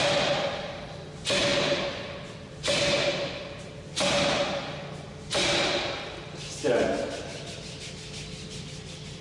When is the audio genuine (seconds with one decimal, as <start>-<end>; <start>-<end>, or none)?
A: 0.0-9.2